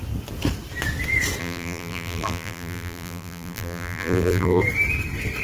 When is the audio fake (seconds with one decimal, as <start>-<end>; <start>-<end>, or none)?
1.4-4.6